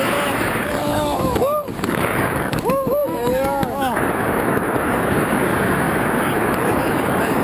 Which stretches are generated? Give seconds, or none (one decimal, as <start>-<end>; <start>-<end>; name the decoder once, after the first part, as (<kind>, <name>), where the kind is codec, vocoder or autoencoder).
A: 0.0-7.4 (codec, DAC)